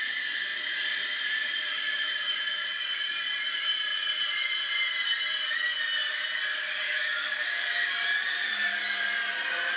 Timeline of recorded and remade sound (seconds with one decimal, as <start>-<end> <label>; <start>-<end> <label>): 0.0-6.5 recorded; 6.5-7.9 remade; 7.9-9.8 recorded